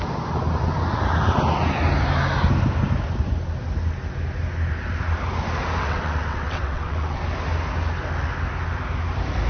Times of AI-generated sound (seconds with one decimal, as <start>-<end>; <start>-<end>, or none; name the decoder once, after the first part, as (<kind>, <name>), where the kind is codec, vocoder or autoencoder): 5.8-7.2 (vocoder, WaveNeXt)